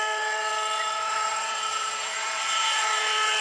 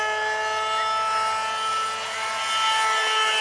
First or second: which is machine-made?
first